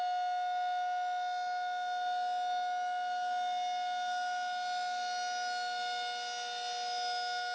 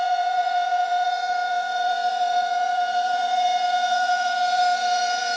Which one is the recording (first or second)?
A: first